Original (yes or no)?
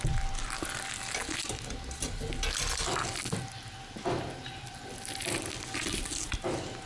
yes